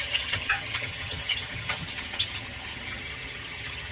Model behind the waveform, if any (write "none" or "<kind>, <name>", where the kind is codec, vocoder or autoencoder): vocoder, HiFi-GAN